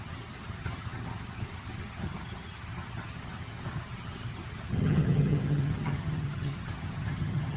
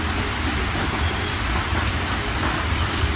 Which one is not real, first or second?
first